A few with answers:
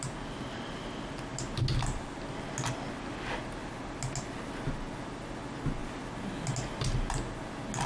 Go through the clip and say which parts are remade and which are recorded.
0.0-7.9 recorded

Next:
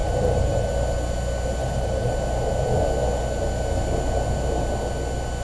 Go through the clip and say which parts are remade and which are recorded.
0.0-0.7 remade; 0.7-1.6 recorded; 1.6-2.1 remade; 2.1-5.4 recorded

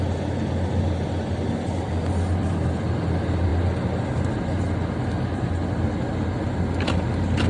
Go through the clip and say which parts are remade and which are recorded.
0.0-7.5 recorded

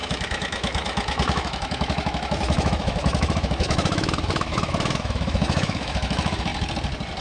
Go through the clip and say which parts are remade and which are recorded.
0.0-6.5 remade; 6.5-7.2 recorded

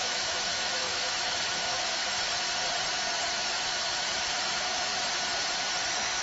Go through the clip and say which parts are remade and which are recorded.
0.0-2.0 remade; 2.0-3.5 recorded; 3.5-4.9 remade; 4.9-6.2 recorded

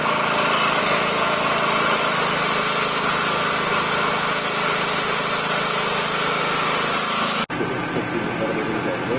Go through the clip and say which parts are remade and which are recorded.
0.0-9.2 recorded

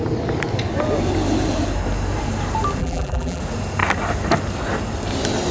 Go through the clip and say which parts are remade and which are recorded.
0.0-2.8 recorded; 2.8-3.4 remade; 3.4-5.5 recorded